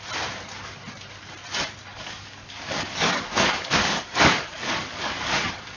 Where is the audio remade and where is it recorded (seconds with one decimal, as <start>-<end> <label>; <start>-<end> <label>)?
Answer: 0.0-1.9 recorded; 1.9-5.8 remade